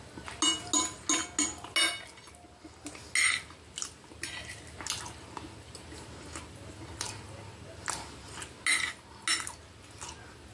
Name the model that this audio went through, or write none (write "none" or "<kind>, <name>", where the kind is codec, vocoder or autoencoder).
none